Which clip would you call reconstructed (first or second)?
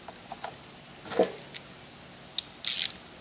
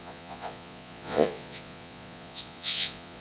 second